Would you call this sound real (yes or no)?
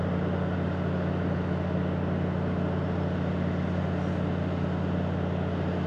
yes